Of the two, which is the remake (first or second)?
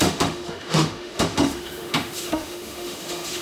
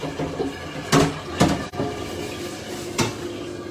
first